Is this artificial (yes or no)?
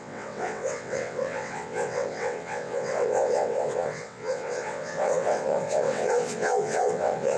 yes